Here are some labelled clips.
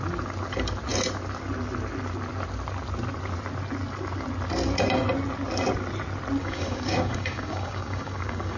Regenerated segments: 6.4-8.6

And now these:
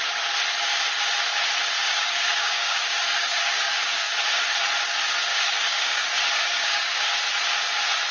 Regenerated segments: 1.8-4.1; 5.3-6.0; 6.5-7.1

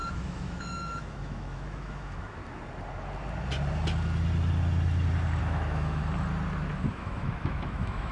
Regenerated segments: 0.0-2.4; 5.4-6.0; 6.9-8.1

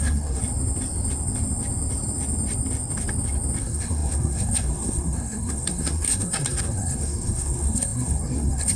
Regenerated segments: 0.0-0.4; 3.6-8.8

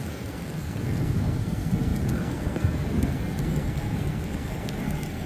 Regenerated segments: 0.0-5.3

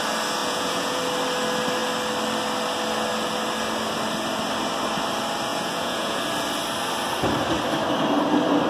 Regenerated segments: 0.4-1.0; 5.5-6.2